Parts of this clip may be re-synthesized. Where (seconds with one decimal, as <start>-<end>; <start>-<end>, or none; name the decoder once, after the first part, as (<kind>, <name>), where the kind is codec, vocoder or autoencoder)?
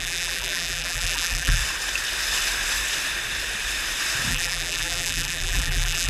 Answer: 0.0-1.6 (vocoder, BigVGAN v2); 4.3-6.1